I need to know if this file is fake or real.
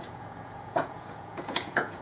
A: fake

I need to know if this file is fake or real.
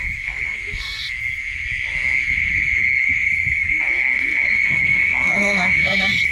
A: fake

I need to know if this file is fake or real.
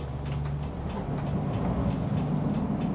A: real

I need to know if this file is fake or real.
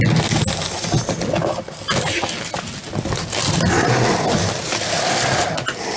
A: real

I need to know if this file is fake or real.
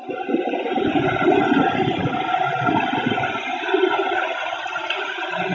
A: fake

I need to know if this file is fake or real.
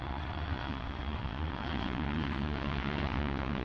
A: fake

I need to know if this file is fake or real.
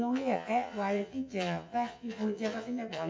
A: fake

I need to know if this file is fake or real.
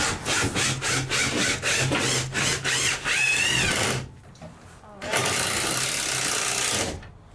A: real